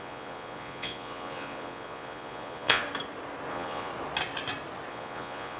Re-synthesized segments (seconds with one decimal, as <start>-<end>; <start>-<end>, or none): 0.0-2.8; 3.5-3.9; 4.9-5.6